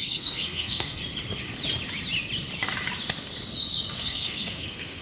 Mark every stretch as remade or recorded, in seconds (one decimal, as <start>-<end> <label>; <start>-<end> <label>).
0.0-1.0 remade; 1.0-4.0 recorded; 4.0-5.0 remade